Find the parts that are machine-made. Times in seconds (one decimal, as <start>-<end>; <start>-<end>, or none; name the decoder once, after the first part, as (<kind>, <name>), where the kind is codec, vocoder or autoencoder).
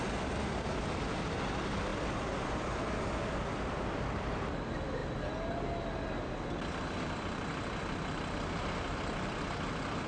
none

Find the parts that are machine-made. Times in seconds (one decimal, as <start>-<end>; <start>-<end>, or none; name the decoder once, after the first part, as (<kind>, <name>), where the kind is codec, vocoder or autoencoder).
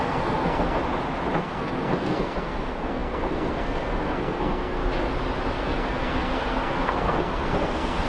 0.0-0.8 (codec, SNAC); 1.4-4.8; 5.5-8.1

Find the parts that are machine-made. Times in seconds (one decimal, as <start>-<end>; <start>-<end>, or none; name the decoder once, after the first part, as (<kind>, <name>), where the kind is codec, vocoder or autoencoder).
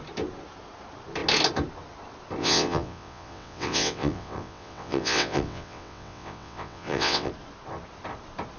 2.4-7.3 (vocoder, WaveNeXt)